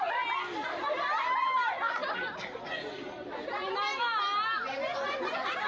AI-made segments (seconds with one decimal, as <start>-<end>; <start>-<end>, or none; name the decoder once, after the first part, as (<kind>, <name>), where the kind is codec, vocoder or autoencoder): none